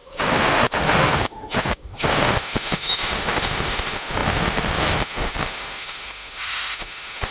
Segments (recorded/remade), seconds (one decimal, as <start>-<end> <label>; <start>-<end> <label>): 0.0-7.3 remade